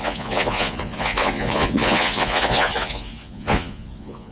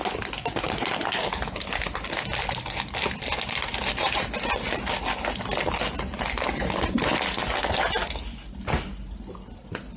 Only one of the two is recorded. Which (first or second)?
second